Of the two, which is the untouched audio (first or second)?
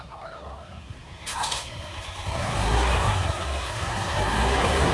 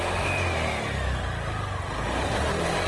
second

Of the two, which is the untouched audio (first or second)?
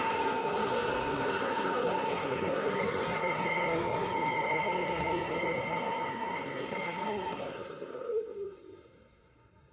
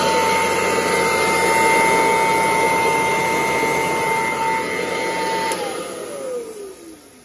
second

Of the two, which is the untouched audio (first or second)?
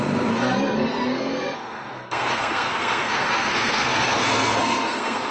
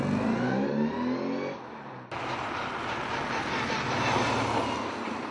second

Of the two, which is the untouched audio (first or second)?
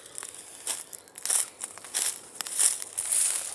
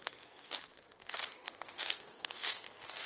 first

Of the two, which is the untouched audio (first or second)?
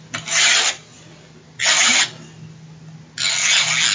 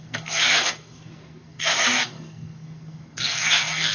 first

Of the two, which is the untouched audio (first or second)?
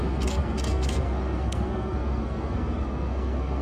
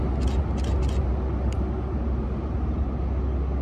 second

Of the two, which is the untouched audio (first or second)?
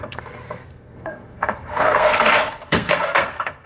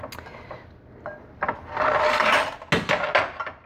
second